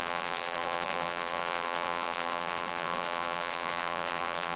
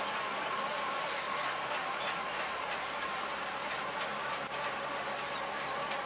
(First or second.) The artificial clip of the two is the first